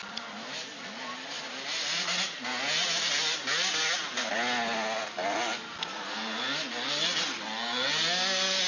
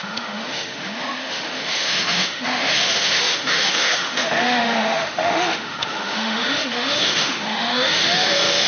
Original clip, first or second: first